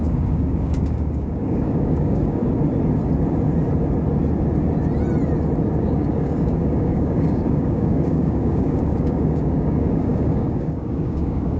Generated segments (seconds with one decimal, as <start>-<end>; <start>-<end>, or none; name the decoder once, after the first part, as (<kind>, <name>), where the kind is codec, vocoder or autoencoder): 0.0-2.4 (codec, DAC); 5.8-11.6